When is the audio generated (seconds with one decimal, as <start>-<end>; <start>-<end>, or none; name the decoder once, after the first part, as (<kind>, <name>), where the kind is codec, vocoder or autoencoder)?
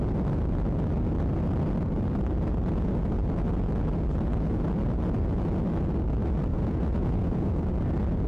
6.5-7.5 (vocoder, Vocos)